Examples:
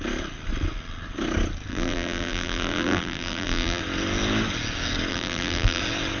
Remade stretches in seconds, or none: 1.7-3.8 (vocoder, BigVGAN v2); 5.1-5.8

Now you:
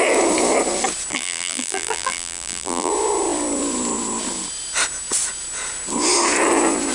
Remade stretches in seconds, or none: 1.1-2.9 (vocoder, BigVGAN v2)

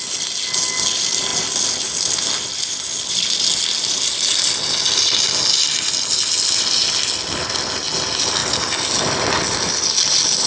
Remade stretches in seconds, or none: none